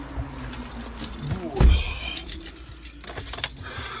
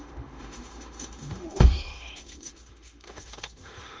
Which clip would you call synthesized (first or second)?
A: second